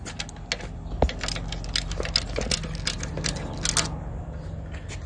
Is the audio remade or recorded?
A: recorded